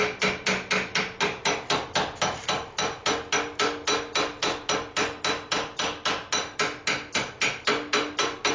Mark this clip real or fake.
real